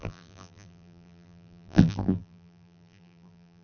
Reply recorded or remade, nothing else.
remade